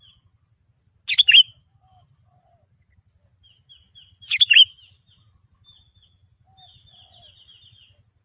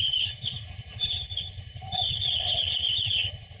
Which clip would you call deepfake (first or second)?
second